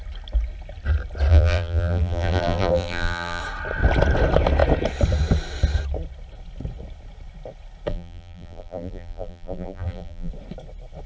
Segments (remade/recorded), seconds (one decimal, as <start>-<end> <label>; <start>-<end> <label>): 0.0-1.3 recorded; 1.3-3.4 remade; 3.4-7.9 recorded; 7.9-10.3 remade; 10.3-11.1 recorded